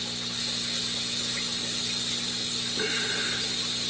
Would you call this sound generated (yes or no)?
no